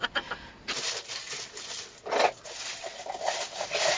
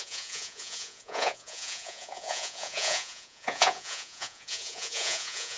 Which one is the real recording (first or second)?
first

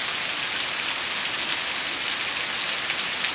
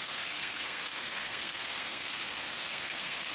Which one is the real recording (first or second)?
first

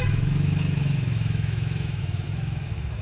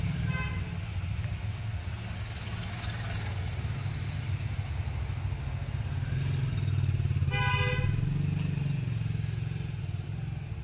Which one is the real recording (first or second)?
second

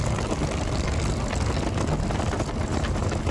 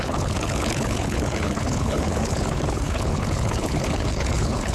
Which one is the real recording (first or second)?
first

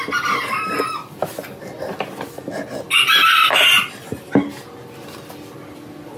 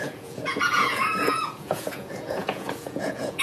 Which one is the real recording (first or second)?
first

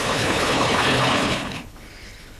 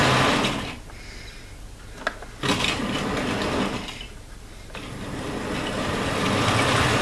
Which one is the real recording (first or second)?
second